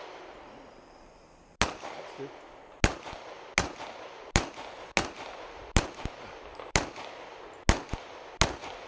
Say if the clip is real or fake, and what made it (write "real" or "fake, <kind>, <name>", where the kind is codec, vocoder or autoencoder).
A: real